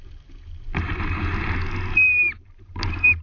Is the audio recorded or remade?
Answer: recorded